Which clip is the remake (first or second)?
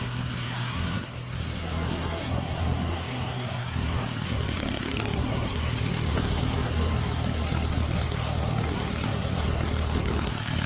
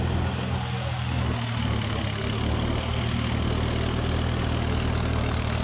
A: first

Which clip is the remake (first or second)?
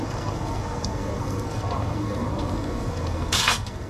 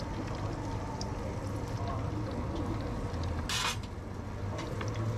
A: first